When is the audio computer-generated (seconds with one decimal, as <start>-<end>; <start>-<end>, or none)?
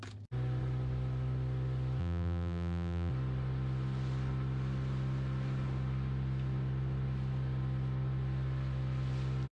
2.0-3.1